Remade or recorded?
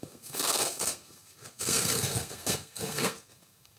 remade